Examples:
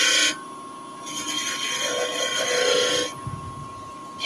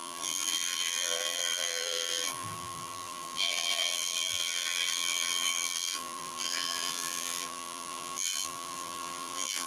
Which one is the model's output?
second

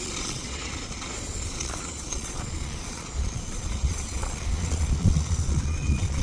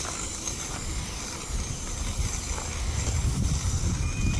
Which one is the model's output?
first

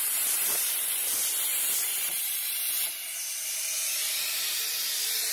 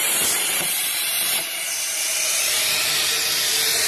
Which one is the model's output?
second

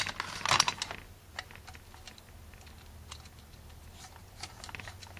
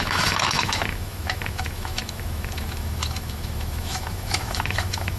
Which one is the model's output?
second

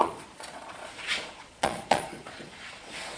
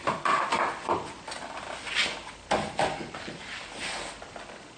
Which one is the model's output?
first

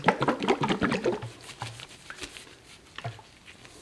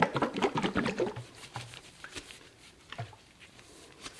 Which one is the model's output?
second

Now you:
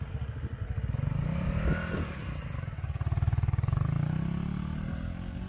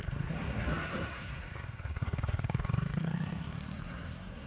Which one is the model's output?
second